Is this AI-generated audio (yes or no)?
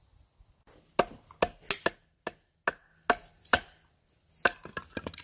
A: no